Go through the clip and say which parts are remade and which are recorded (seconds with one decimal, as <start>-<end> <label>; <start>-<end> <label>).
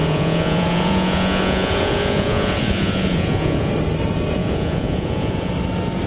0.0-3.7 remade; 3.7-4.4 recorded; 4.4-5.5 remade; 5.5-6.1 recorded